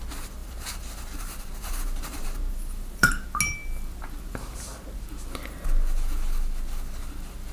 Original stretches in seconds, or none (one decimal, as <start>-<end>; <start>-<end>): 0.0-0.4; 3.1-7.5